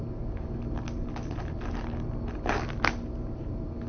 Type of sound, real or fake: real